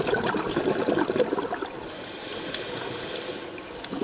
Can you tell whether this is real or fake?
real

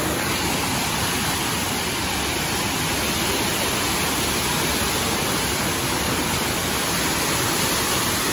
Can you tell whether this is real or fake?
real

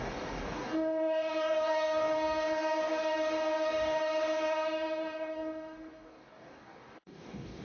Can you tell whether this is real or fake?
fake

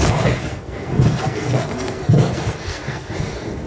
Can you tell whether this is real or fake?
fake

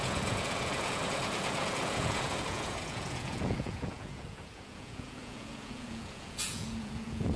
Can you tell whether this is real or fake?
fake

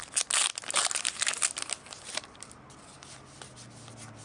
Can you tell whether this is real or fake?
real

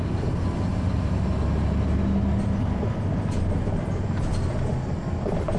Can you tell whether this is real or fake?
real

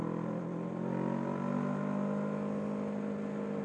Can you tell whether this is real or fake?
real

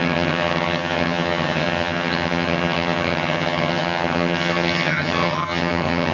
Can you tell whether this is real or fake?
fake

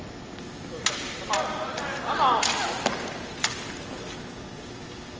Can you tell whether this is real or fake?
real